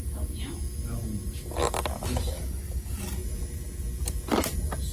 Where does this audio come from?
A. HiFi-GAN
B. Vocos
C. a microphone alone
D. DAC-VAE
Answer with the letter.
C